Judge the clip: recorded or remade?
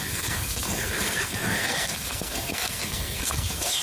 remade